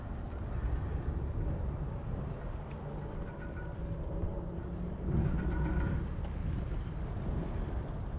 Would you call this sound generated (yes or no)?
no